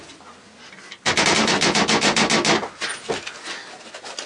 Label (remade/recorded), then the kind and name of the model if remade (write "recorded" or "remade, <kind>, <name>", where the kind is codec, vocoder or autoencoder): recorded